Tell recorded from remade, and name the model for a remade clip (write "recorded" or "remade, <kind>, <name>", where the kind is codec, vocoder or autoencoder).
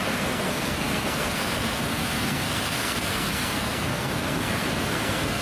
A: remade, codec, SNAC